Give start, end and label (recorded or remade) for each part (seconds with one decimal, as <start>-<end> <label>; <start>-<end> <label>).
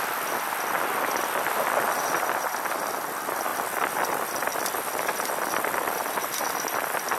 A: 0.0-7.2 recorded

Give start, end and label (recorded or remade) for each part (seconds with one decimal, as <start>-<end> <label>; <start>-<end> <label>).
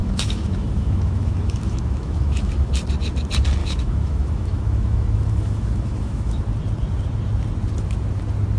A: 0.0-2.7 remade; 2.7-3.6 recorded; 3.6-6.4 remade; 6.4-8.6 recorded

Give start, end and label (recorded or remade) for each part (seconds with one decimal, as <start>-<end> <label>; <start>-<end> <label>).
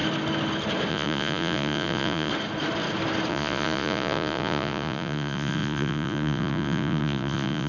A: 0.0-0.9 recorded; 0.9-2.3 remade; 2.3-3.3 recorded; 3.3-7.7 remade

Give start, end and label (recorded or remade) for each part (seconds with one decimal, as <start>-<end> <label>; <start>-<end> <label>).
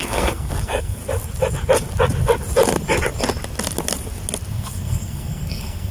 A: 0.0-1.0 remade; 1.0-4.5 recorded; 4.5-5.9 remade